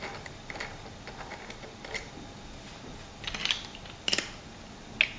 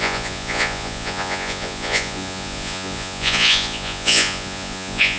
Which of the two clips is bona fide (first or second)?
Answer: first